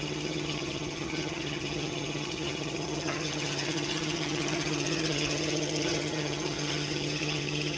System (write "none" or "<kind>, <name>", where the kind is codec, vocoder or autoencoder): vocoder, HiFi-GAN